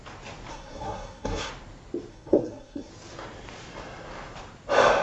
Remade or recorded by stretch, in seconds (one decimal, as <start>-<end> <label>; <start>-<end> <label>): 0.0-0.5 recorded; 0.5-1.5 remade; 1.5-2.1 recorded; 2.1-2.9 remade; 2.9-5.0 recorded